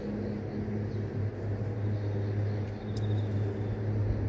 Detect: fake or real real